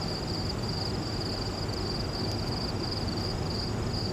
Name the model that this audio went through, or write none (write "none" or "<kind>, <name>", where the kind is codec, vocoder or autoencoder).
none